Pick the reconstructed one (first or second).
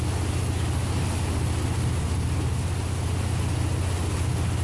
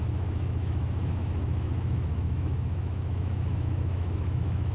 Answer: second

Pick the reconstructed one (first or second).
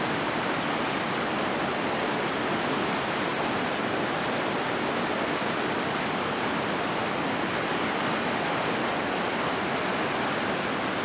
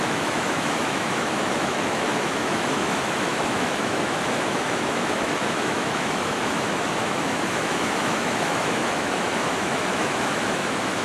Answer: second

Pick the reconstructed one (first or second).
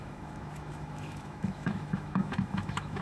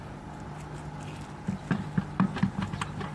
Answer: first